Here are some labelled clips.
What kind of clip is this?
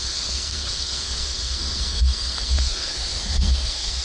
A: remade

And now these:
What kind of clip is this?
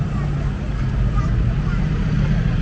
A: recorded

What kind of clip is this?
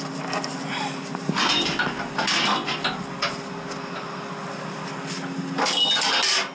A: recorded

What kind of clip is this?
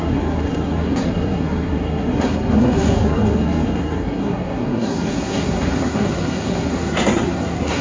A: remade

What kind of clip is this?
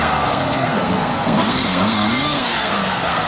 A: remade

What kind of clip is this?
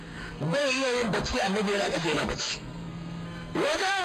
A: remade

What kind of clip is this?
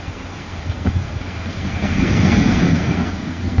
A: remade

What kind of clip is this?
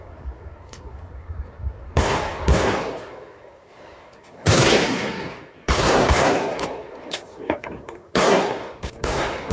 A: remade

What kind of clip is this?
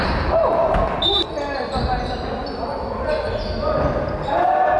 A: recorded